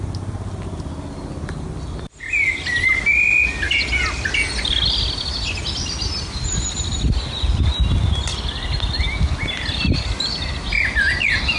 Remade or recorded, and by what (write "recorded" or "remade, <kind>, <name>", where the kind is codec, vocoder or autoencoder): recorded